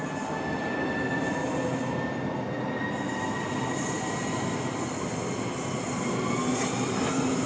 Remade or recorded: recorded